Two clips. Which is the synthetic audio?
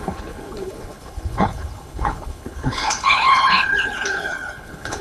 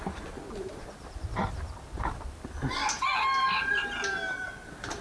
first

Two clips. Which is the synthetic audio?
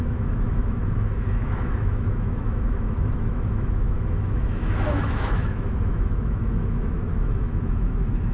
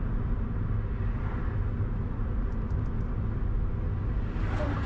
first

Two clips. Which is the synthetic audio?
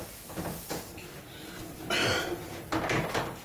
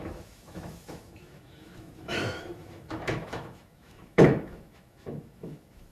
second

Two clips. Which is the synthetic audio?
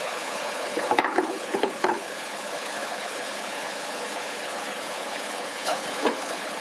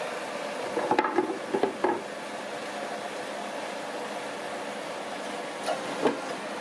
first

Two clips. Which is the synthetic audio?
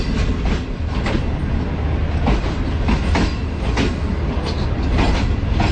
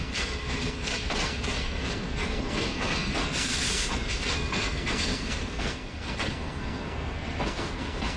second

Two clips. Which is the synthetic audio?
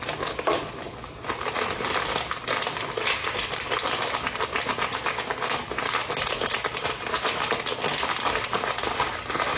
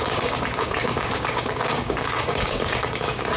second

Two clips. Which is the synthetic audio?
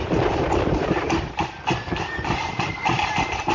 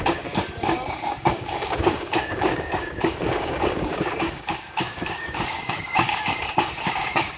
second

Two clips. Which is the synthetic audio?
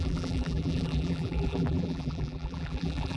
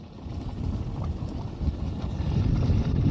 first